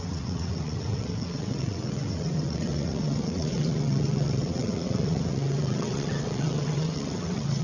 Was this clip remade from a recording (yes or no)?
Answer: yes